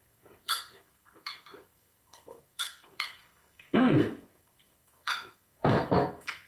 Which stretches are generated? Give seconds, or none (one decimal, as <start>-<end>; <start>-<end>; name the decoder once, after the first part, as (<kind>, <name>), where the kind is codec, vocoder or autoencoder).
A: 0.0-6.5 (codec, SNAC)